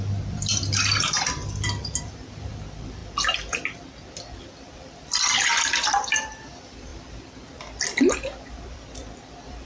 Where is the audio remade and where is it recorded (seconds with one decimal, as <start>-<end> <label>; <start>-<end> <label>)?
0.0-1.4 remade; 1.4-2.0 recorded; 2.0-3.0 remade; 3.0-4.4 recorded; 4.4-9.7 remade